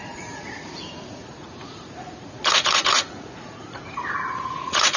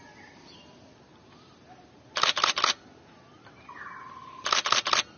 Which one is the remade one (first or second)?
first